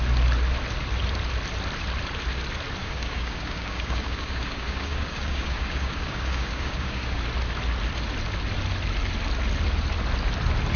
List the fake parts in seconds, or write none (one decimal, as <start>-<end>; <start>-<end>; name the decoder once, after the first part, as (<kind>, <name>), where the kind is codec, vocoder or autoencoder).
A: 2.8-7.2 (codec, DAC)